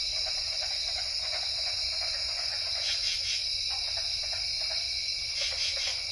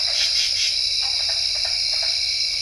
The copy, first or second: first